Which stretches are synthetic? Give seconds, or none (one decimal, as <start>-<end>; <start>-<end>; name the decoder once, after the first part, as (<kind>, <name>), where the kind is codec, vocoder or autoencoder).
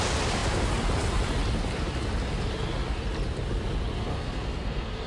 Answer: 4.1-5.1 (codec, SNAC)